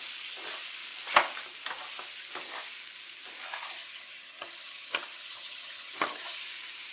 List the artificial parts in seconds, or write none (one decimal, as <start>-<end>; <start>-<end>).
3.8-6.4